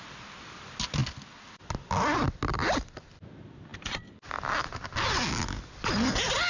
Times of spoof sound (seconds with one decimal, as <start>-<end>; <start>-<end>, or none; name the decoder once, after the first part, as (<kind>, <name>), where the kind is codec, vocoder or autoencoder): none